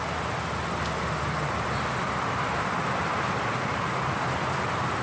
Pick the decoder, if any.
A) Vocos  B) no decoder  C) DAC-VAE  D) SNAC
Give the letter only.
B